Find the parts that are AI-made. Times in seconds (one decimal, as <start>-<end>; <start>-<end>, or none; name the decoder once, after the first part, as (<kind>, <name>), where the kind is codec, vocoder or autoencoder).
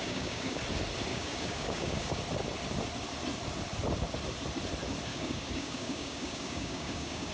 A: 0.0-0.6 (codec, DAC); 1.1-2.2; 5.1-7.3